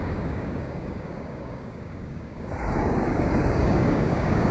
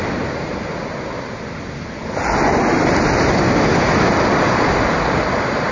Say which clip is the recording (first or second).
second